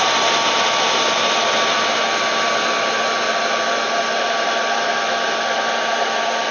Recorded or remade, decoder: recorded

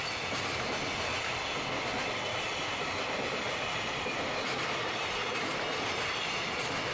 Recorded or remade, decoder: recorded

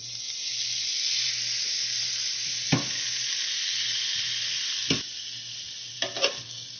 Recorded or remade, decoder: recorded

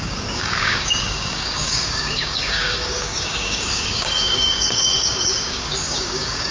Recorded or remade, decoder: remade, codec, DAC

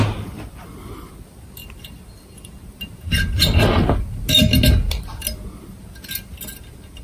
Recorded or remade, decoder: recorded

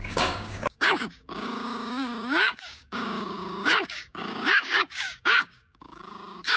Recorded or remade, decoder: remade, codec, DAC